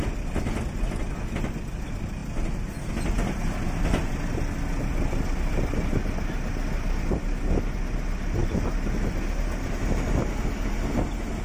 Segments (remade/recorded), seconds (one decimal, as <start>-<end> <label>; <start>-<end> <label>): 0.0-11.4 recorded